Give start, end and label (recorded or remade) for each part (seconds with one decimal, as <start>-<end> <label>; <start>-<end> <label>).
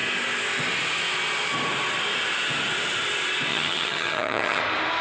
0.0-3.5 recorded; 3.5-4.6 remade; 4.6-5.0 recorded